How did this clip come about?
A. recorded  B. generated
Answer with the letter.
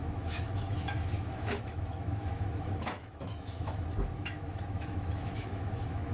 B